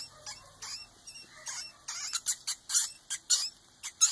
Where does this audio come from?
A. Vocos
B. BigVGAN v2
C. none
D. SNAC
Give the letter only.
C